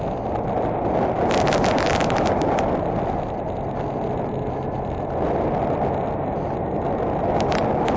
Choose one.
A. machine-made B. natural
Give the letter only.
B